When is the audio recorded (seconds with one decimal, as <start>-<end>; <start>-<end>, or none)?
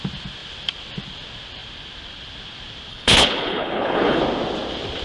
0.0-2.9; 4.2-5.0